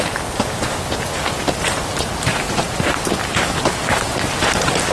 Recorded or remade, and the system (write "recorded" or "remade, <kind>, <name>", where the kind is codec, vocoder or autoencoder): recorded